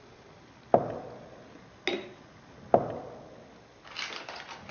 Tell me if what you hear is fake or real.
real